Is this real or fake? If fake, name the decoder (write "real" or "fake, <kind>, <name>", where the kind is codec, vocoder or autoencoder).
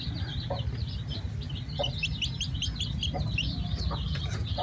real